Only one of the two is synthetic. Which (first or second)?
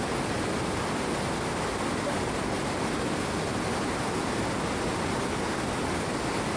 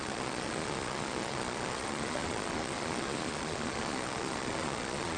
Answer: second